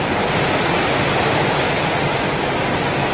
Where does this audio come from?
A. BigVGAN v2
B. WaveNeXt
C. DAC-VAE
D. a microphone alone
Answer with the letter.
D